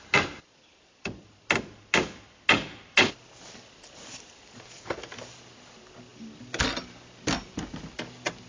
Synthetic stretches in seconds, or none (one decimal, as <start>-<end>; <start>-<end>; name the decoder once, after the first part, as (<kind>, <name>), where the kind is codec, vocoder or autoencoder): 6.1-7.9 (vocoder, BigVGAN v2)